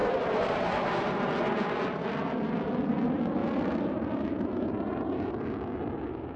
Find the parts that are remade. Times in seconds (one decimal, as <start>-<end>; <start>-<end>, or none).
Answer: 0.0-0.8; 3.4-5.3